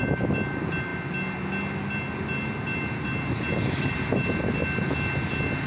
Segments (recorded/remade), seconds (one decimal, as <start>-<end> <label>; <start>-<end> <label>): 0.0-5.7 recorded